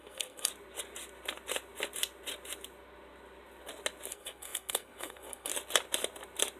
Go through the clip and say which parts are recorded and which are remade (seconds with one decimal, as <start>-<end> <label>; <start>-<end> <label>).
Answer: 0.0-0.5 remade; 0.5-4.1 recorded; 4.1-5.5 remade; 5.5-6.6 recorded